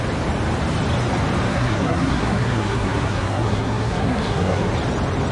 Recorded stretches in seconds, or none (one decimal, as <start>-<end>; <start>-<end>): 0.0-1.5; 4.7-5.3